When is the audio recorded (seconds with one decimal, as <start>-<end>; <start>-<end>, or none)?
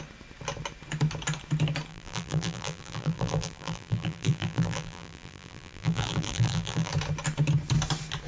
0.0-1.9; 6.9-8.3